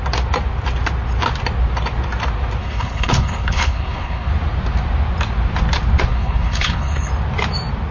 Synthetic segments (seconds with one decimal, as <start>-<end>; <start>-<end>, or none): 2.6-4.3; 6.1-7.1